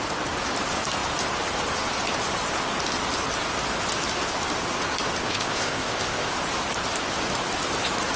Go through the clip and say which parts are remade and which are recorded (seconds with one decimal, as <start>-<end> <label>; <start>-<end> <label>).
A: 0.0-5.2 recorded; 5.2-6.3 remade; 6.3-8.2 recorded